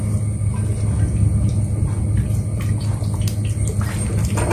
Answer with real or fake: real